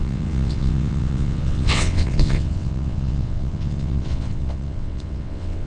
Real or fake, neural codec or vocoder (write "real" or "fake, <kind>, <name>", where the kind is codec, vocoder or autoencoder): fake, vocoder, WaveNeXt